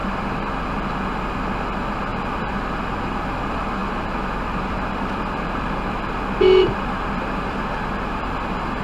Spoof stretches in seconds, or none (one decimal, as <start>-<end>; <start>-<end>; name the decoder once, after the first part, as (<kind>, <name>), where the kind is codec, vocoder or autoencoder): 0.0-0.9 (vocoder, BigVGAN v2); 2.1-2.8; 3.8-8.2